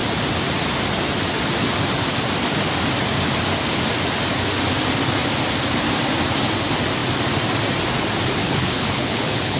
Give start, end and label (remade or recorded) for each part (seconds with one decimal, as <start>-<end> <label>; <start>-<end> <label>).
0.0-8.4 recorded; 8.4-9.6 remade